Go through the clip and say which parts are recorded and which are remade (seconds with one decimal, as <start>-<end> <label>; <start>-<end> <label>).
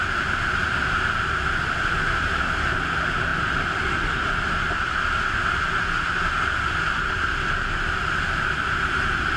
0.0-9.4 recorded